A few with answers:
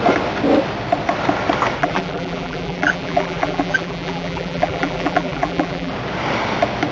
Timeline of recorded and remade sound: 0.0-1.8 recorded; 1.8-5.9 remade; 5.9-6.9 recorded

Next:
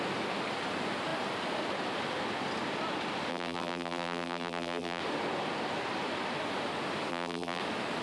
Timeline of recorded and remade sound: 0.0-3.3 recorded; 3.3-5.0 remade; 5.0-7.1 recorded; 7.1-7.6 remade; 7.6-8.0 recorded

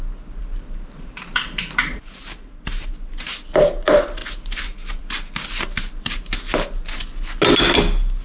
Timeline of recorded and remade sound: 0.0-0.4 recorded; 0.4-2.9 remade; 2.9-4.2 recorded; 4.2-5.0 remade; 5.0-8.2 recorded

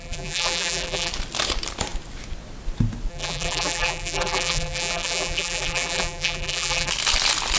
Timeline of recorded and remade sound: 0.0-1.1 remade; 1.1-3.1 recorded; 3.1-6.9 remade; 6.9-7.6 recorded